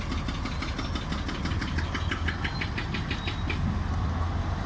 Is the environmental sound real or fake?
real